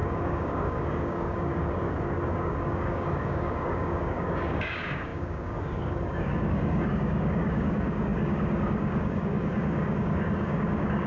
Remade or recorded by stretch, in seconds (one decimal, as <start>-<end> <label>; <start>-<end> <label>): 0.0-11.1 remade